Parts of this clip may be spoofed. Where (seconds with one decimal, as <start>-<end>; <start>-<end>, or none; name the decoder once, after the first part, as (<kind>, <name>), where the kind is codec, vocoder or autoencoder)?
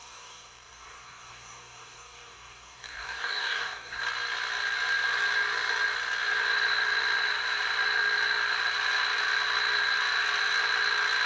0.0-4.0 (codec, DAC)